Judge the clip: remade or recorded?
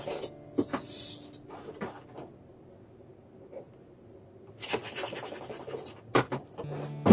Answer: recorded